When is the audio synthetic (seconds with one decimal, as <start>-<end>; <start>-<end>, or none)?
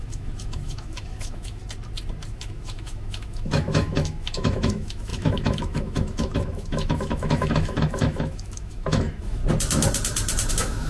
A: 0.0-1.6; 2.3-9.4; 10.5-10.9